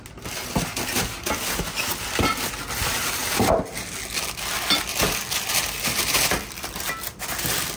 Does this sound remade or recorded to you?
recorded